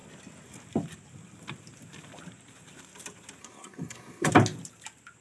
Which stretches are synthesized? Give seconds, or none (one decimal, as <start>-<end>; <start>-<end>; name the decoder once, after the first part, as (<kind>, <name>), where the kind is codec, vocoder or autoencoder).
3.4-4.3 (codec, SNAC)